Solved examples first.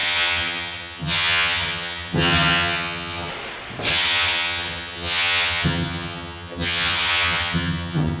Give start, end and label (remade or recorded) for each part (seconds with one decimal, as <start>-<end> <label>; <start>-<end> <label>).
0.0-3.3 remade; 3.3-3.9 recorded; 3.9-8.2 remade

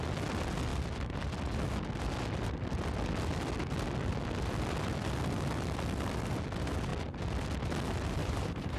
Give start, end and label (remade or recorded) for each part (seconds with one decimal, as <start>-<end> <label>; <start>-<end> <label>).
0.0-8.2 recorded; 8.2-8.8 remade

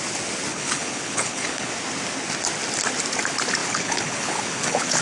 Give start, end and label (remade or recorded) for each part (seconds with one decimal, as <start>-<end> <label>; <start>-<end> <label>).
0.0-0.5 recorded; 0.5-1.7 remade; 1.7-3.6 recorded; 3.6-5.0 remade